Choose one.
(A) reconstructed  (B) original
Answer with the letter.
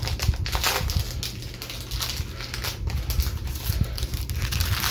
B